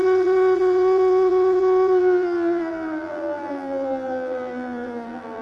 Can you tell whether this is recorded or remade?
remade